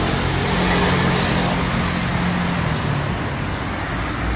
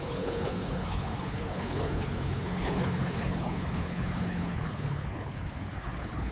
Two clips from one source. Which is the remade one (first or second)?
second